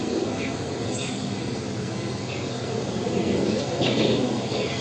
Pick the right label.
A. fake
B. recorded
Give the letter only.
A